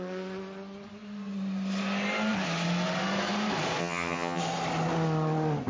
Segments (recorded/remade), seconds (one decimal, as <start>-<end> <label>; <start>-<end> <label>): 0.0-3.8 recorded; 3.8-4.4 remade; 4.4-5.7 recorded